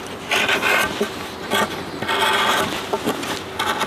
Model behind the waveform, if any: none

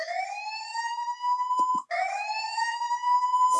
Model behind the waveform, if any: autoencoder, DAC-VAE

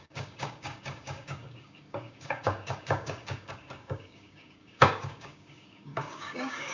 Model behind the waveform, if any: codec, DAC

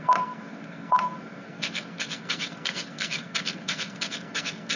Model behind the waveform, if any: codec, SNAC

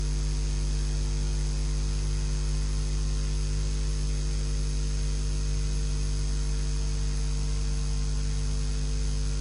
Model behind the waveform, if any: none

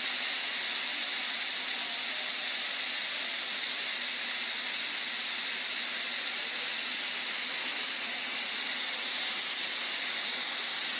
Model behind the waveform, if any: none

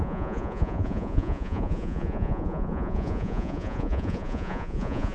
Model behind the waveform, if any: vocoder, Vocos